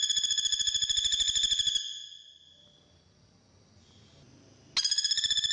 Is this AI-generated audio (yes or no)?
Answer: no